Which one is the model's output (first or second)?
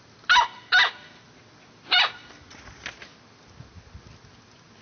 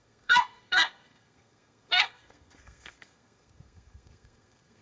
second